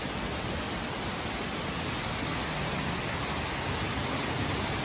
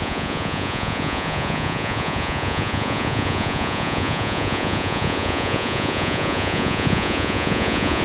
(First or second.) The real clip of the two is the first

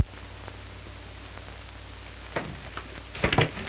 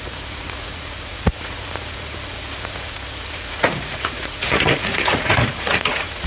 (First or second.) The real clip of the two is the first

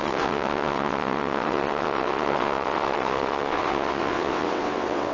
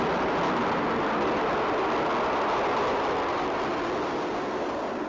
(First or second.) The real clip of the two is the second